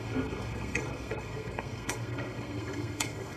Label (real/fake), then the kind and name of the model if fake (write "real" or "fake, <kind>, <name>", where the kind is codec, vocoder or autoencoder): fake, codec, SNAC